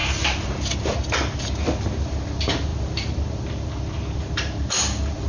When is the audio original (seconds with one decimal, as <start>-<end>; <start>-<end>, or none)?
0.0-5.3